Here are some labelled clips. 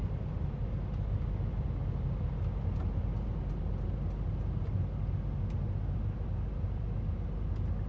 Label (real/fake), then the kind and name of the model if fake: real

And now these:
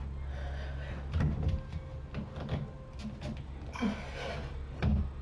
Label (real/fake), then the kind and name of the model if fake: real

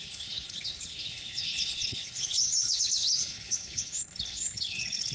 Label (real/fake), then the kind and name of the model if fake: fake, codec, HILCodec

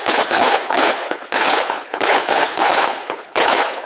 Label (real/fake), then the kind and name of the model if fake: fake, codec, HILCodec